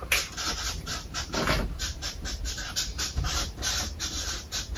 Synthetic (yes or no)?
yes